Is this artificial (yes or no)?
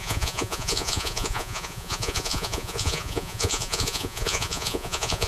yes